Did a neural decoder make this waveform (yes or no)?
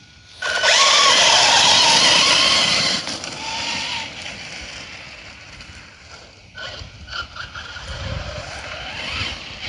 no